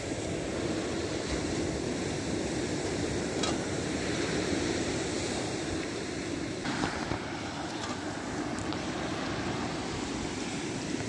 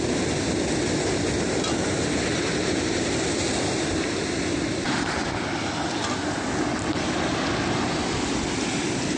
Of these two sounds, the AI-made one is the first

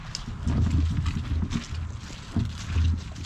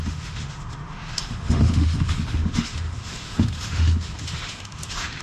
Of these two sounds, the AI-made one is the second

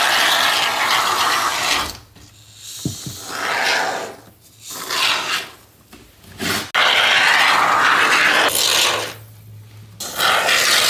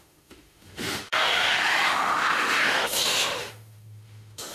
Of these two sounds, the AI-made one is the second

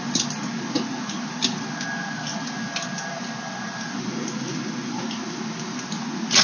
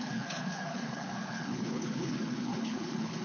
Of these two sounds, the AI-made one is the second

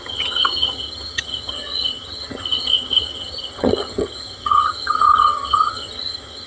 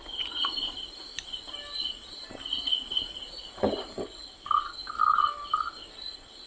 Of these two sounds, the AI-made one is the first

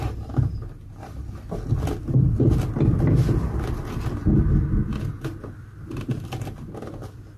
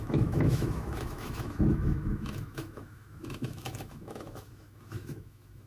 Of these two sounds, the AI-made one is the second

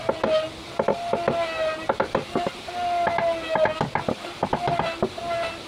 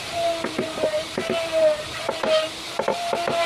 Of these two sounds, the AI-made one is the second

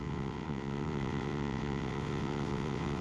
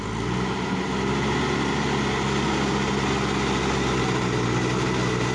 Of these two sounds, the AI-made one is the first